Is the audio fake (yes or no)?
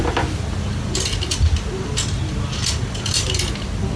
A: no